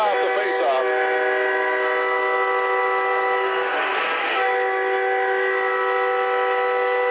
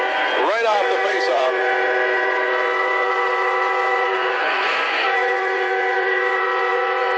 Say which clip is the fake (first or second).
second